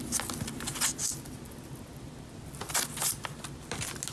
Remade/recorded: recorded